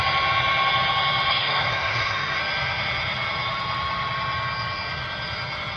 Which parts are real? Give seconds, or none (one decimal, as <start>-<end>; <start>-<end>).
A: 0.0-1.3; 2.4-5.8